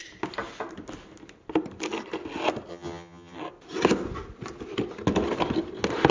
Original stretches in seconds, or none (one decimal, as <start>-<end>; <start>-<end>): 0.0-2.7; 3.4-6.1